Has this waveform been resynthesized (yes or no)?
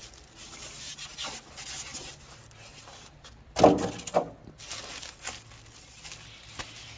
no